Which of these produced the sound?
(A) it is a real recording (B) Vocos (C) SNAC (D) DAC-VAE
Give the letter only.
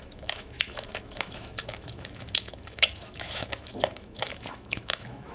D